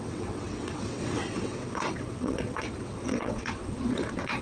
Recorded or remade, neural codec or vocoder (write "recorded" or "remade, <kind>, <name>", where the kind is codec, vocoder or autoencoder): remade, vocoder, WaveNeXt